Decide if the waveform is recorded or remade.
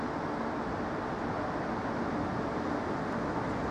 recorded